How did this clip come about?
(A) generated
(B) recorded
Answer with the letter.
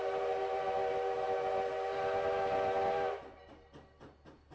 B